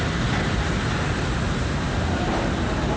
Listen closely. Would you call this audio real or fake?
real